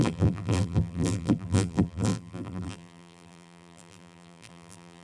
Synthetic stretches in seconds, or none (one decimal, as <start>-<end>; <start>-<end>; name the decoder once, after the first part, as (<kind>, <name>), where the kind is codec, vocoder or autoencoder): 0.0-5.0 (vocoder, BigVGAN v2)